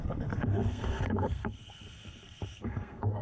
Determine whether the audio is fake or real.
fake